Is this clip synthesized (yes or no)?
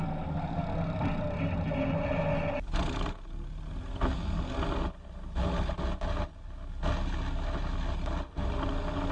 no